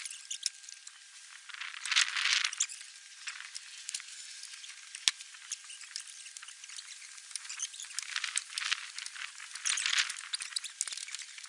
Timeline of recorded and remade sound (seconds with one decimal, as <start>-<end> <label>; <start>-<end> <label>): 0.0-11.5 recorded